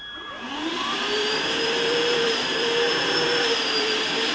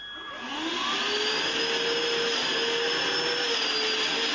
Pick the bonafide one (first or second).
second